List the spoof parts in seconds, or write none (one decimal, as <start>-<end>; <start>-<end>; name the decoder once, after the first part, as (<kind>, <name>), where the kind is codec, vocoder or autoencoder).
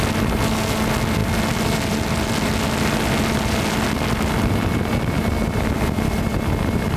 none